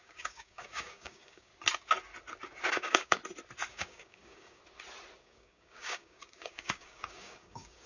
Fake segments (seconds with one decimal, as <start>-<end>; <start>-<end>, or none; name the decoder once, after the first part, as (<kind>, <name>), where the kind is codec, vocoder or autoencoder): 0.0-1.5 (codec, DAC); 2.7-3.2; 3.7-4.6; 5.2-7.9